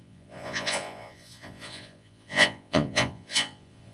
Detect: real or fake fake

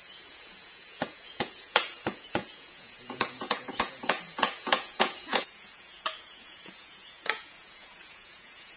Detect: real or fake fake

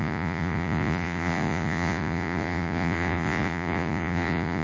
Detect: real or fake fake